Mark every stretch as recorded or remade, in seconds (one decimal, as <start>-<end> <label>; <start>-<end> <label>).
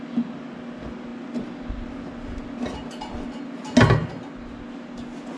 0.0-5.4 recorded